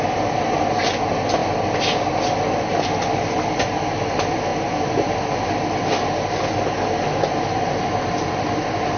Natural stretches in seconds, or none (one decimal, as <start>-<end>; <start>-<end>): 0.0-9.0